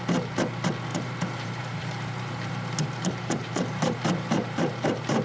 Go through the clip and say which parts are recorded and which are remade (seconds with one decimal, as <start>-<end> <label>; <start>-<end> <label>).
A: 0.0-0.9 recorded; 0.9-4.0 remade; 4.0-4.4 recorded; 4.4-5.2 remade